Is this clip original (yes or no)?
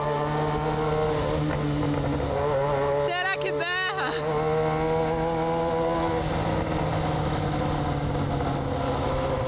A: yes